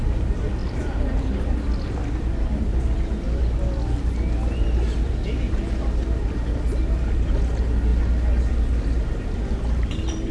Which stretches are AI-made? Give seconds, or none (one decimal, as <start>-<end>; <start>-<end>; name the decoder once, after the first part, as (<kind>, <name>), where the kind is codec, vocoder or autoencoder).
0.6-2.8 (vocoder, BigVGAN v2)